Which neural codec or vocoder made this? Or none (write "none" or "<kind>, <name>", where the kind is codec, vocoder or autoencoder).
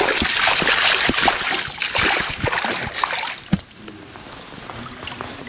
none